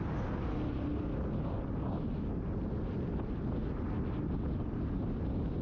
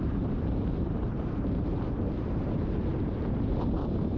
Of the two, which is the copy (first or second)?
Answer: second